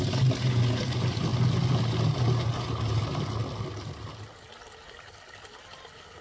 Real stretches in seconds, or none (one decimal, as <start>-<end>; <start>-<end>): 0.0-6.2